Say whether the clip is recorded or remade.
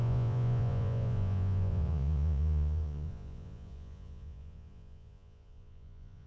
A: remade